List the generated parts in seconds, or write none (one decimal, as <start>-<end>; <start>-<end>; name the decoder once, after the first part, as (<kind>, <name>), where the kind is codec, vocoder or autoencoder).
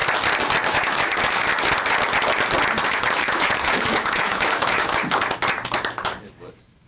0.7-1.5 (autoencoder, DAC-VAE); 2.8-5.0; 6.5-6.9